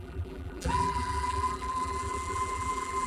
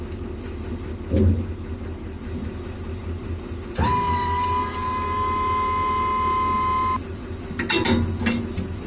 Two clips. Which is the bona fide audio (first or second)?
second